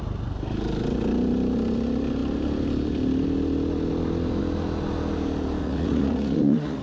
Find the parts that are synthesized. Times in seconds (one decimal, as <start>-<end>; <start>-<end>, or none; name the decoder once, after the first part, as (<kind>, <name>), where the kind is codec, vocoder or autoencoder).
5.6-6.8 (vocoder, Vocos)